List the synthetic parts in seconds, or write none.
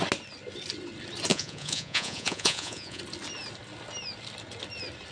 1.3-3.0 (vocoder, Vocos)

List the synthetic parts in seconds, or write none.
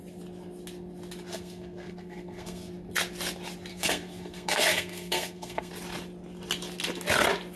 1.3-2.7 (codec, SNAC); 3.7-5.7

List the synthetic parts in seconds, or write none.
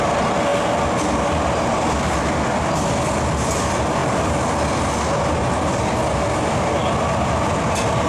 none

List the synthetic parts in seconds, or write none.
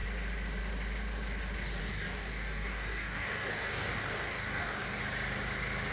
1.8-5.0 (codec, DAC)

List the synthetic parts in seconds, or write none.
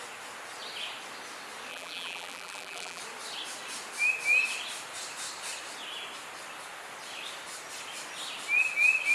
1.7-3.0 (vocoder, BigVGAN v2)